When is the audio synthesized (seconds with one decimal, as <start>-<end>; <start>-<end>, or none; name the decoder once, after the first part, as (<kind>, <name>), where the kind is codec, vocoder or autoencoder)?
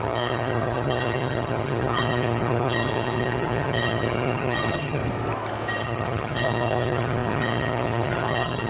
0.0-5.0 (vocoder, HiFi-GAN); 5.8-8.7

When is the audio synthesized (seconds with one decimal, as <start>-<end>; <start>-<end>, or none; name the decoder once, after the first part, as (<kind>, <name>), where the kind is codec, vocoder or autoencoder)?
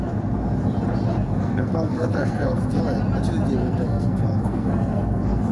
1.2-2.8 (codec, SNAC); 3.6-5.5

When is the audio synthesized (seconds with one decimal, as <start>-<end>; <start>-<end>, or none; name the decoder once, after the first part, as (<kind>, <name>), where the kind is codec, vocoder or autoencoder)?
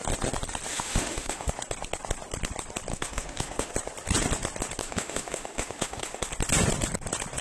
0.7-1.5 (autoencoder, DAC-VAE); 2.9-3.7; 4.8-6.3